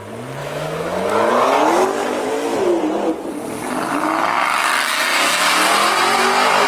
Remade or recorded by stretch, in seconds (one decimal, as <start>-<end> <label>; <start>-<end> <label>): 0.0-0.4 recorded; 0.4-1.3 remade; 1.3-6.7 recorded